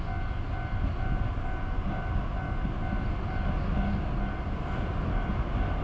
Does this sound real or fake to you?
real